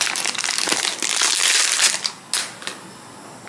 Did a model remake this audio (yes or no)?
no